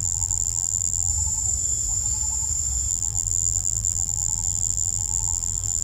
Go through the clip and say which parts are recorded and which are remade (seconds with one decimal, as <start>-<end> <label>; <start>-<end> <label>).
0.0-1.1 remade; 1.1-2.9 recorded; 2.9-5.8 remade